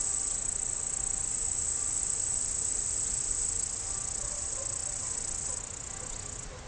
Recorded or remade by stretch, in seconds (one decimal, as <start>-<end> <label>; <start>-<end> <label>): 0.0-6.7 recorded